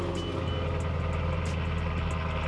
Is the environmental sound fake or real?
real